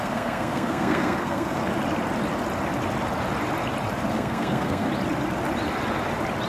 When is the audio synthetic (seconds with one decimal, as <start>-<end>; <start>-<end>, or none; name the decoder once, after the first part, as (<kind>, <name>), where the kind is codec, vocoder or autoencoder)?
0.0-1.6 (codec, SNAC); 4.1-4.9